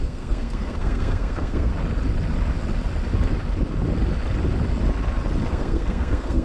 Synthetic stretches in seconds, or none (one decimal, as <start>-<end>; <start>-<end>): 0.0-1.7; 5.5-6.4